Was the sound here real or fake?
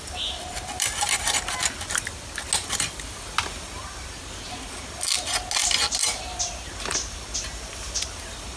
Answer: real